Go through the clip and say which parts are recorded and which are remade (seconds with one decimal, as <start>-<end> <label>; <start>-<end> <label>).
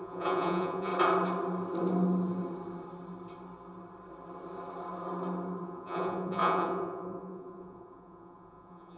0.0-0.9 remade; 0.9-5.6 recorded; 5.6-9.0 remade